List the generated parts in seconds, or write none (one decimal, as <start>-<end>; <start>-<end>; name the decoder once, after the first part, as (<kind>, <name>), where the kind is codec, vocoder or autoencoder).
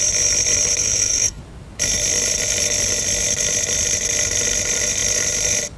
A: 0.8-1.4 (codec, SNAC)